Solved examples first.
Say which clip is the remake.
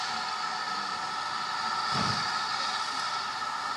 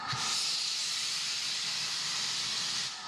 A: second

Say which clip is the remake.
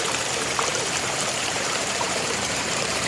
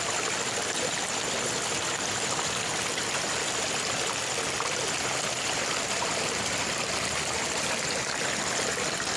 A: first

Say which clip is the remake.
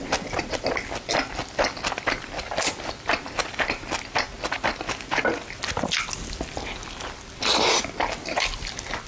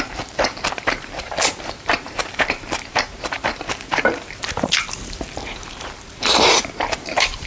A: second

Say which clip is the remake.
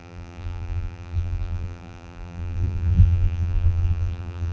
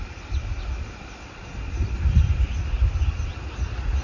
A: first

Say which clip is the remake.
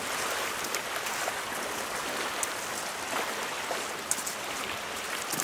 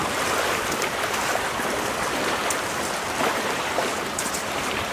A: second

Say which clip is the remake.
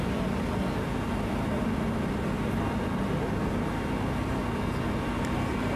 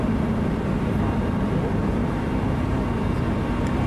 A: second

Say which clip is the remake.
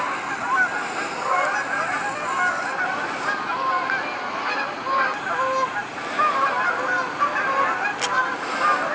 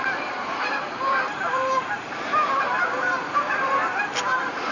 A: second